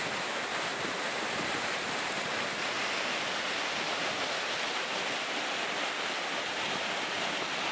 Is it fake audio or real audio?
real